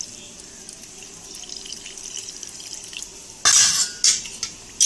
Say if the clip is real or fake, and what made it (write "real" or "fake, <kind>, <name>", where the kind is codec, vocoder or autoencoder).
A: real